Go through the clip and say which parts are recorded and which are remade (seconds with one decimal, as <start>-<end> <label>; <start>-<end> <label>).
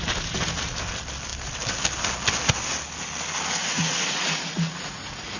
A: 0.0-3.6 recorded; 3.6-5.4 remade